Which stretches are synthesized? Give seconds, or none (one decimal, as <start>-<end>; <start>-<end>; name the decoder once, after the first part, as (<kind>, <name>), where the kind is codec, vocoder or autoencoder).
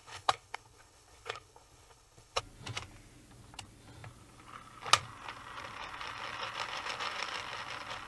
0.0-2.4 (codec, HILCodec)